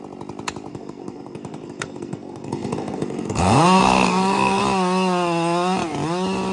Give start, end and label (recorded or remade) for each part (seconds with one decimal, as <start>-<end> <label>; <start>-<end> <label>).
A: 0.0-0.7 recorded; 0.7-4.6 remade; 4.6-6.5 recorded